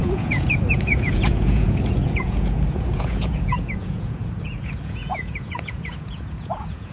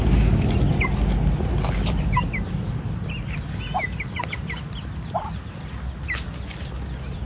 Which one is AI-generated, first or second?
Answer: first